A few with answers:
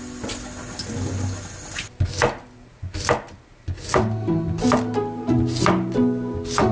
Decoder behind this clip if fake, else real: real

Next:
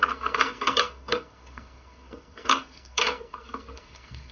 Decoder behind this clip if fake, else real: fake, codec, SNAC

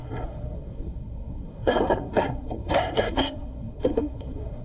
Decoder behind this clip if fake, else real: fake, codec, SNAC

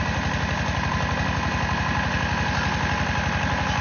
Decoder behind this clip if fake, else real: real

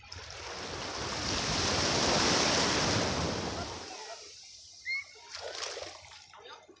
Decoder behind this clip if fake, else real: real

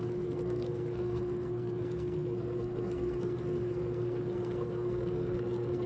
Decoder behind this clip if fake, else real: fake, codec, SNAC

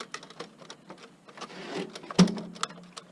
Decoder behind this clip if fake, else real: real